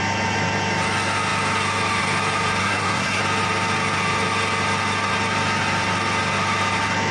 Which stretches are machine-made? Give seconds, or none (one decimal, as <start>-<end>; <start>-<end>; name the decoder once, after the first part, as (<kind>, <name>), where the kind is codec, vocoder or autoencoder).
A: 2.6-3.2 (codec, SNAC)